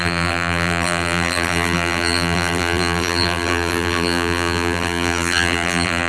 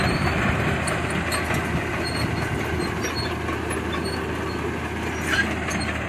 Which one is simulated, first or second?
first